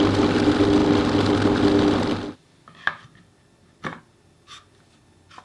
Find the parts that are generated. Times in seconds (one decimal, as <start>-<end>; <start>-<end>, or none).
none